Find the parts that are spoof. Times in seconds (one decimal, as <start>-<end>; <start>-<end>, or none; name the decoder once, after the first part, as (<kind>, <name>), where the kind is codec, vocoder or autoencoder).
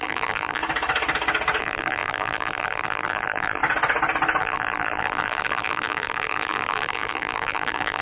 0.0-0.6 (vocoder, BigVGAN v2); 1.6-3.6; 4.4-8.0